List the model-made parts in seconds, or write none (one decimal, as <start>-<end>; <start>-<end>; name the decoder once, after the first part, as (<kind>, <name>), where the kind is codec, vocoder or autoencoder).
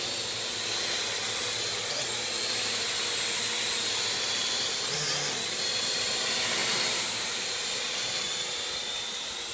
6.6-7.7 (vocoder, BigVGAN v2)